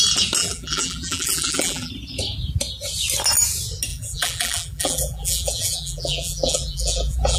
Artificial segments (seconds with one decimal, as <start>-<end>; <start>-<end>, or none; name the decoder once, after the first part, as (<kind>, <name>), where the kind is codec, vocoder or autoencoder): 0.4-1.9 (vocoder, BigVGAN v2); 3.9-7.4